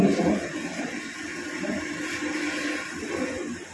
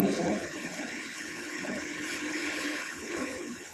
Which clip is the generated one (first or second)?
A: second